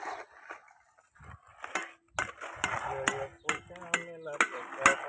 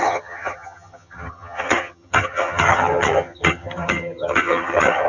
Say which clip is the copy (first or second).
second